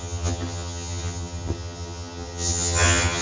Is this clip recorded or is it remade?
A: remade